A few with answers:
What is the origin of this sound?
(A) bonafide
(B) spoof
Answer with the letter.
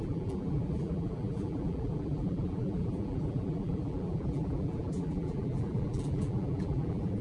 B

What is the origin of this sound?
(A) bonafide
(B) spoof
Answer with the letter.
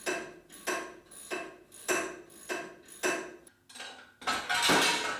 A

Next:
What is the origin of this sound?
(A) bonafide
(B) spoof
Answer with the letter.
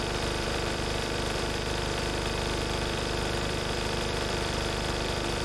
B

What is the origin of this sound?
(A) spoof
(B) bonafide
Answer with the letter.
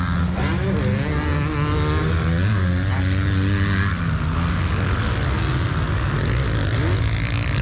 B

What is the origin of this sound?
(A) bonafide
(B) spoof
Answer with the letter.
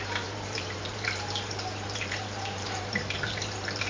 B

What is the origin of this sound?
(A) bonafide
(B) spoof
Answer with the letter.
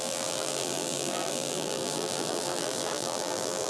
B